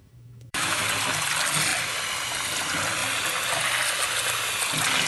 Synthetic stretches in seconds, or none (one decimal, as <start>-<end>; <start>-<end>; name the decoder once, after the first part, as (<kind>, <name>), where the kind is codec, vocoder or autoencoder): 0.0-0.8 (autoencoder, DAC-VAE)